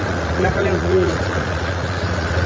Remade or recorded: remade